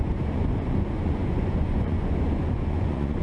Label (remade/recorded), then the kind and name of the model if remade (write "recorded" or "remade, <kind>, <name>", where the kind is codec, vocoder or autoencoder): remade, vocoder, Vocos